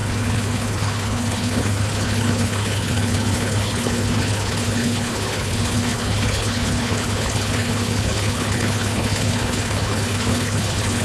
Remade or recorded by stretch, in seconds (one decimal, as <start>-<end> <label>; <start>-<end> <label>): 0.0-11.0 remade